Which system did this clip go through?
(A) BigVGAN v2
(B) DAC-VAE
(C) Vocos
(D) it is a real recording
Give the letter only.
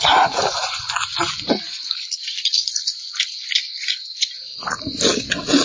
A